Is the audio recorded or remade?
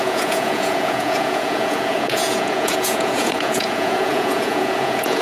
remade